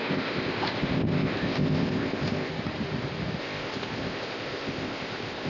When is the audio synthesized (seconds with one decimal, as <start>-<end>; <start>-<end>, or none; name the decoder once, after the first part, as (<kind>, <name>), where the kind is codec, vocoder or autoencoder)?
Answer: 0.0-2.5 (codec, ZipCodec); 3.4-5.5